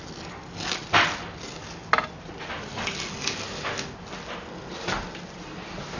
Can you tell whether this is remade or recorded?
recorded